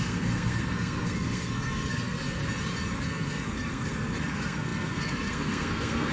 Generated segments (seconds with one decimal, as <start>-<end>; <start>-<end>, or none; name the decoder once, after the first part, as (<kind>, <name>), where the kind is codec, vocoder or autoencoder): 0.0-2.4 (codec, SNAC); 3.0-6.1